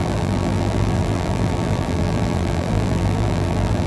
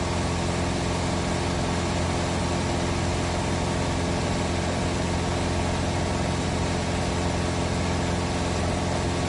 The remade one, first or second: first